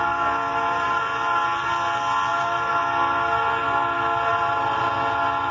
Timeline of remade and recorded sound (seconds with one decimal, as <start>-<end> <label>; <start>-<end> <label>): 0.0-0.5 recorded; 0.5-1.0 remade; 1.0-2.3 recorded; 2.3-2.8 remade; 2.8-4.3 recorded; 4.3-4.9 remade; 4.9-5.5 recorded